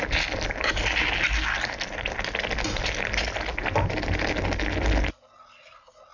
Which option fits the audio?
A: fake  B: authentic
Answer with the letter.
B